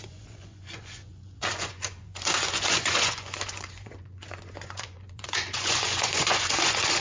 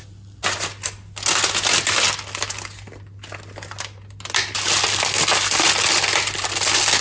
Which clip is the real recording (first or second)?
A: second